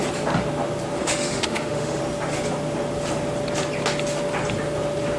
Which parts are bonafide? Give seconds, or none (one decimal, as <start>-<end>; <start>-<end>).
0.0-1.0; 2.0-5.2